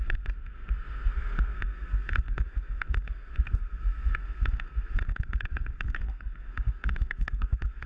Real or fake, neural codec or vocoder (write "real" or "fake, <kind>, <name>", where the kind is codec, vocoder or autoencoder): fake, codec, SNAC